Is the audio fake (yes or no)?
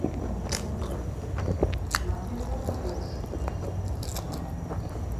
no